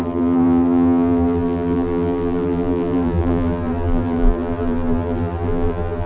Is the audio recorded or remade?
remade